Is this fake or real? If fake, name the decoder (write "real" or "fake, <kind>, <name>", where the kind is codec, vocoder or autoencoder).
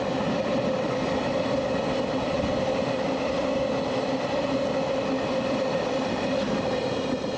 real